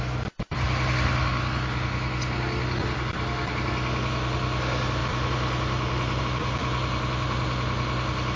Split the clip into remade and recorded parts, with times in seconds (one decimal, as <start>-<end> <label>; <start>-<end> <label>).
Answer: 0.0-8.4 recorded